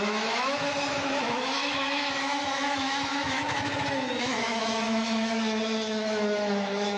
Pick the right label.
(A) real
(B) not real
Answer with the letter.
B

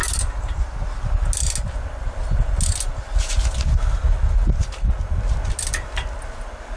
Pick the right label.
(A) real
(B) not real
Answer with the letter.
A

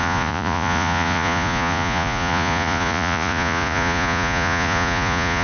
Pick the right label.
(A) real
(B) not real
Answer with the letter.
B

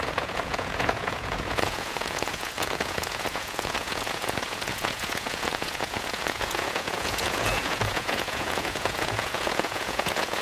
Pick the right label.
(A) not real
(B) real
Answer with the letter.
A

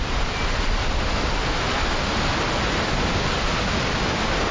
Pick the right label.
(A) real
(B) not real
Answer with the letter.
A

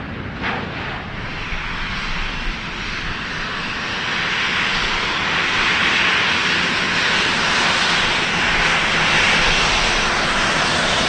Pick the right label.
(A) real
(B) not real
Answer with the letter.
A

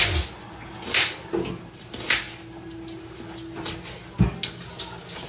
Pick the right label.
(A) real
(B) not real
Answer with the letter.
A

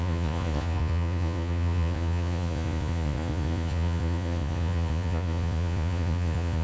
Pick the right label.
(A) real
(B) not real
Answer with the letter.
B